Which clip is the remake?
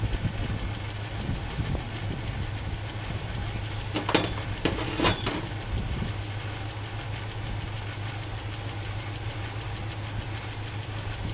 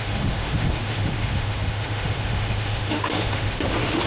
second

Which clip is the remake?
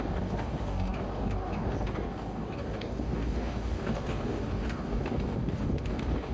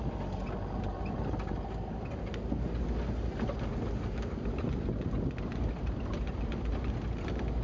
first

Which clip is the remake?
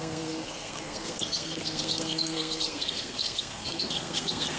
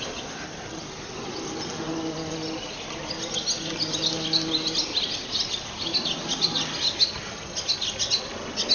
first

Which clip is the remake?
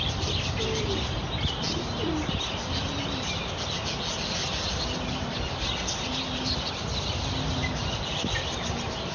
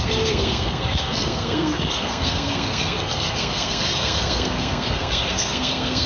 second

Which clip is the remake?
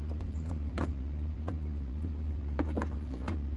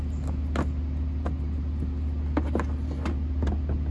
first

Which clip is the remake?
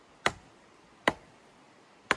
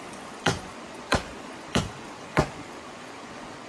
second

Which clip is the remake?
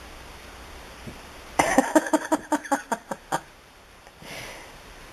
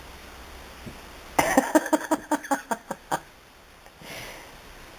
first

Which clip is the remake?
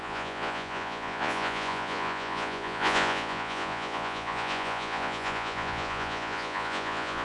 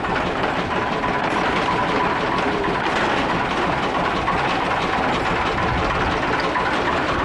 first